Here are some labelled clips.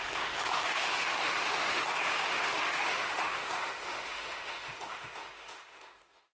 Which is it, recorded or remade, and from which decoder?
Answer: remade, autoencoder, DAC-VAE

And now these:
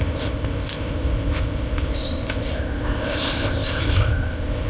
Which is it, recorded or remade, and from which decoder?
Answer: remade, codec, ZipCodec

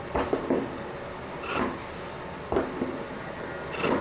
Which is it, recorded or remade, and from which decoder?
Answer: recorded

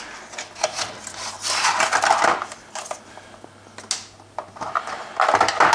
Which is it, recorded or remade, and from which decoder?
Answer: recorded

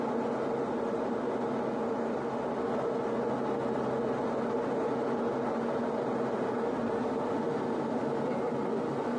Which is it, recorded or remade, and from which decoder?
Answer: recorded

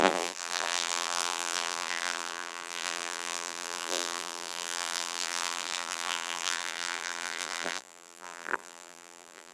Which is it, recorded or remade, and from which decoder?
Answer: remade, vocoder, BigVGAN v2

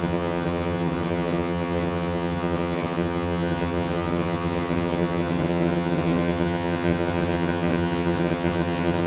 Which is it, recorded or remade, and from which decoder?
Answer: remade, vocoder, HiFi-GAN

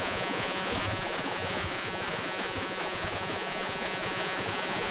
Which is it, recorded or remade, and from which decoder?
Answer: remade, vocoder, Vocos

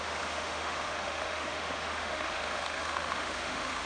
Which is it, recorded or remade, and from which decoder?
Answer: remade, autoencoder, DAC-VAE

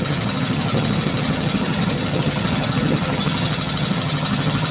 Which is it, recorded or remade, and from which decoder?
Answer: remade, vocoder, HiFi-GAN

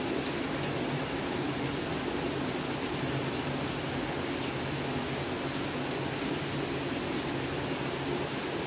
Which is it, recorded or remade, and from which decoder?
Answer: recorded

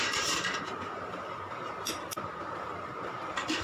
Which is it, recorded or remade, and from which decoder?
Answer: remade, vocoder, BigVGAN v2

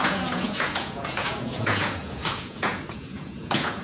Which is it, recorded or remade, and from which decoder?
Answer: remade, vocoder, Vocos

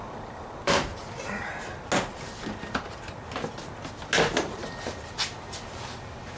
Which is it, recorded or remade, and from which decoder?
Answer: recorded